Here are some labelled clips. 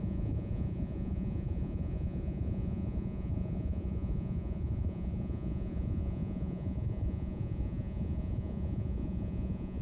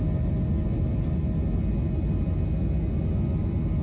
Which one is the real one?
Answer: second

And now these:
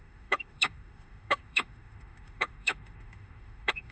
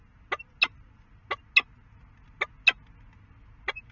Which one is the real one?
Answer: second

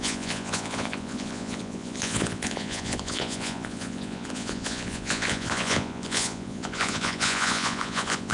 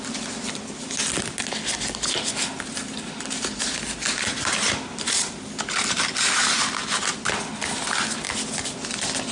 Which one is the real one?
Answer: second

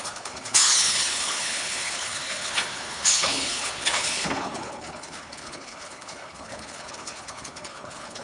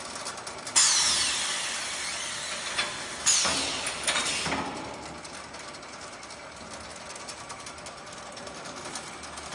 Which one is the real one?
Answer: second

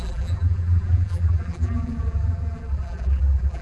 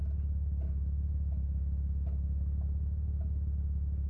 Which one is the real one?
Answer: second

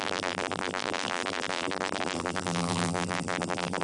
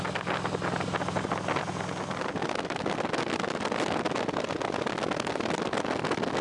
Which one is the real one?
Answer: second